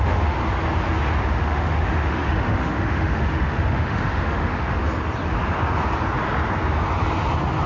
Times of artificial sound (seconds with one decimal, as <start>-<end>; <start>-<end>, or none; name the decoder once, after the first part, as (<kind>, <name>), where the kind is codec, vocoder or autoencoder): 0.0-0.4 (autoencoder, DAC-VAE); 1.2-4.8